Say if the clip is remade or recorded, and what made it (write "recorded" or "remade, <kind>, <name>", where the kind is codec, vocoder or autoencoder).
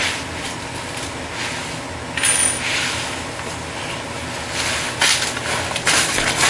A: recorded